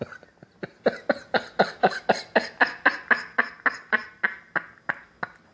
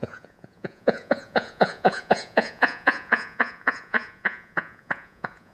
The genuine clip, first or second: first